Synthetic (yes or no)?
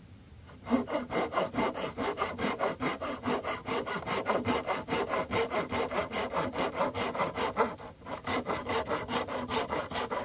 yes